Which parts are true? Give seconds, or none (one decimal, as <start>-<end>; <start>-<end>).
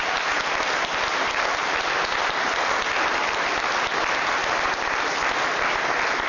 0.0-6.3